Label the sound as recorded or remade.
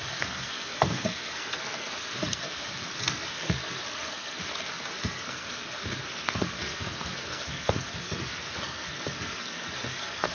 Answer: remade